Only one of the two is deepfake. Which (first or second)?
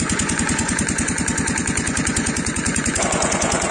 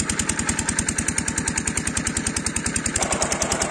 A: first